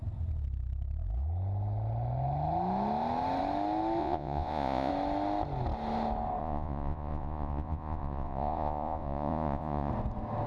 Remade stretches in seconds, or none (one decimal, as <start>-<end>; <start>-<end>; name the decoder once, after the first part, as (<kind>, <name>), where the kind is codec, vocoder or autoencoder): 4.0-4.9 (vocoder, Vocos); 6.4-9.9